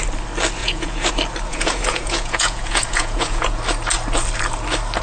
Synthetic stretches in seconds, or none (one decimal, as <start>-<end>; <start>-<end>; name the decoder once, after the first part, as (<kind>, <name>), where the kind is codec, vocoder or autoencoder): 0.6-1.1 (vocoder, Vocos); 1.5-3.6